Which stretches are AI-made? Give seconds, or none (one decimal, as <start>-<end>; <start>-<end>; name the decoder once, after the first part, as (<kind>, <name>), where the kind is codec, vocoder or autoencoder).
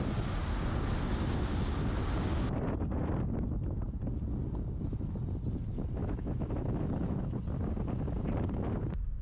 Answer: 6.0-7.3 (autoencoder, DAC-VAE)